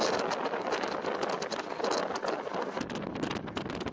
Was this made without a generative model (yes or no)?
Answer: yes